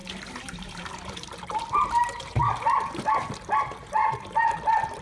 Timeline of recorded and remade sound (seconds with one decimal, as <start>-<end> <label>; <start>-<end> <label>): 0.0-3.0 remade; 3.0-4.0 recorded; 4.0-5.0 remade